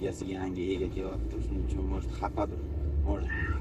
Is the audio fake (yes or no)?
yes